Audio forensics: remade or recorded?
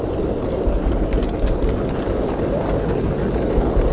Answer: recorded